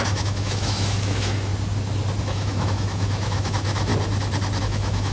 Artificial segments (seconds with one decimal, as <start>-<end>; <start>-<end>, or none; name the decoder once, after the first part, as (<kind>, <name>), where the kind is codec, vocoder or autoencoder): 0.0-1.5 (autoencoder, DAC-VAE); 2.2-3.9; 4.6-5.1